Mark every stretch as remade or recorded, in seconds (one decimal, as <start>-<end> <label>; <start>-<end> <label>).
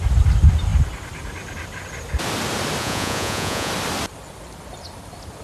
0.0-2.8 recorded; 2.8-3.7 remade; 3.7-5.4 recorded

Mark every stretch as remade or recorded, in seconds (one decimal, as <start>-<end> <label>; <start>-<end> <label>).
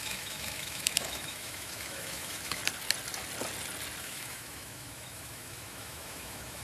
0.0-2.6 remade; 2.6-4.0 recorded; 4.0-6.6 remade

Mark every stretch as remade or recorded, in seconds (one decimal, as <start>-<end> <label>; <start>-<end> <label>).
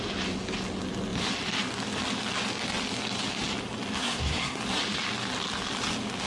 0.0-4.0 recorded; 4.0-4.6 remade; 4.6-6.3 recorded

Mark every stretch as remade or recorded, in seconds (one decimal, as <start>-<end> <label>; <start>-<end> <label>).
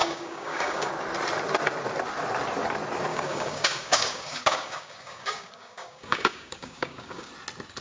0.0-0.9 remade; 0.9-3.1 recorded; 3.1-7.3 remade; 7.3-7.8 recorded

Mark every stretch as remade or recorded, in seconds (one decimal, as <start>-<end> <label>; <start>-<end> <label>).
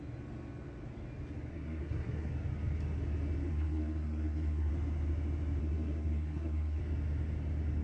0.0-1.5 recorded; 1.5-2.3 remade; 2.3-3.5 recorded; 3.5-4.7 remade; 4.7-5.6 recorded; 5.6-6.8 remade; 6.8-7.8 recorded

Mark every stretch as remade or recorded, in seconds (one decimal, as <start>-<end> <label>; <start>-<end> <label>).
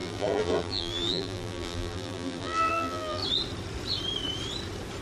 0.0-3.2 remade; 3.2-5.0 recorded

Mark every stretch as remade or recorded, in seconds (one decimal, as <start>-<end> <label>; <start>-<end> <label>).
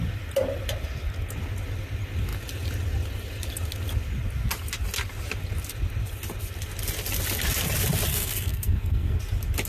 0.0-8.1 recorded; 8.1-9.2 remade; 9.2-9.7 recorded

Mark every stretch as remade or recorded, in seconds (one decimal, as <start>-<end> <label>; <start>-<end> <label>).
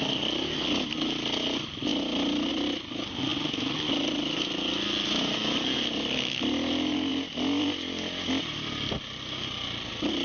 0.0-10.2 recorded